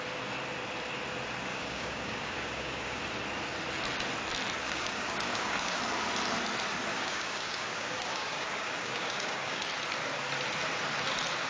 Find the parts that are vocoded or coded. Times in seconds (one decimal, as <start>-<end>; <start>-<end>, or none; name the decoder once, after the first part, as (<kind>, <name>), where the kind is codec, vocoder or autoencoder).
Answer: 1.5-3.0 (codec, DAC); 4.6-5.8; 6.9-9.7